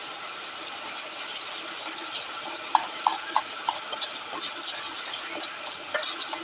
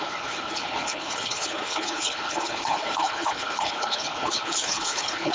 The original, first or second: first